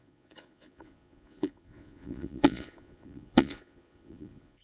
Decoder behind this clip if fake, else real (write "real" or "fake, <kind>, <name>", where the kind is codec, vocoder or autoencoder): fake, vocoder, Vocos